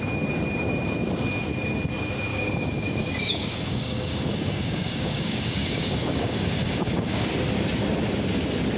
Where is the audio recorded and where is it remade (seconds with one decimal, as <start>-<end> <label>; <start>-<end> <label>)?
0.0-2.3 recorded; 2.3-7.3 remade; 7.3-8.8 recorded